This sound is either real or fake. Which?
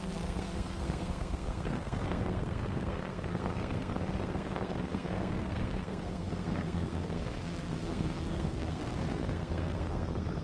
fake